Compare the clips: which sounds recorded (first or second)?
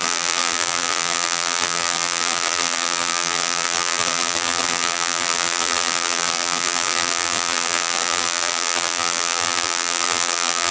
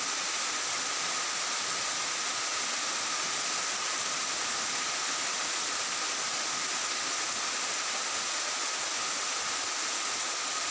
second